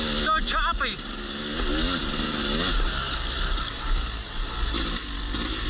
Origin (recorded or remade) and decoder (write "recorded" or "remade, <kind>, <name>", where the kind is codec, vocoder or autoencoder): recorded